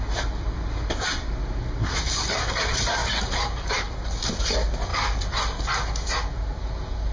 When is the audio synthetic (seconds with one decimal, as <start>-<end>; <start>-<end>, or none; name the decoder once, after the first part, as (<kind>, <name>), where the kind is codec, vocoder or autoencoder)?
none